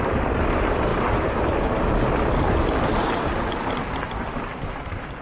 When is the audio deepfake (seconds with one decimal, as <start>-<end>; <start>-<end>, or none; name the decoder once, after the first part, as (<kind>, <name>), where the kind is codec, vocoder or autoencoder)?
0.0-0.9 (vocoder, BigVGAN v2); 4.0-5.2